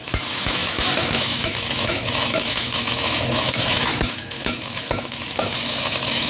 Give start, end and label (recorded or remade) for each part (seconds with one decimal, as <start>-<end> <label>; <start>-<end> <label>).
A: 0.0-6.3 remade